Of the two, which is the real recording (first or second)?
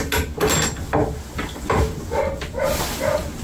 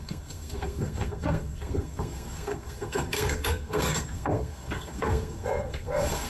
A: first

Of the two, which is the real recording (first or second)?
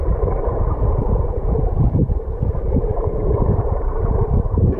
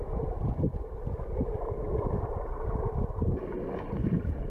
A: second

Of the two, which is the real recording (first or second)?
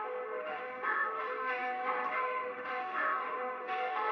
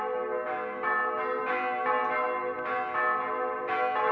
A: second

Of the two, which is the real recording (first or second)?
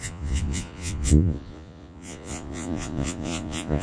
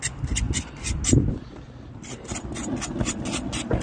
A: second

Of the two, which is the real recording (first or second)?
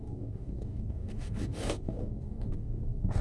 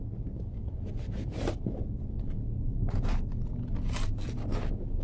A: second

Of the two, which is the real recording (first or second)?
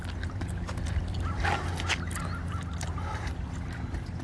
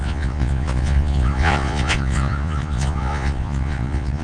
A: first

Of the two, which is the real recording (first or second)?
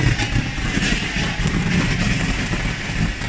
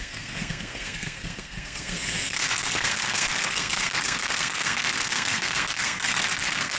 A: first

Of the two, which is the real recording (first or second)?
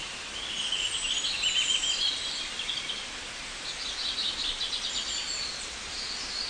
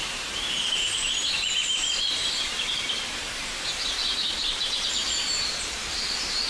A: first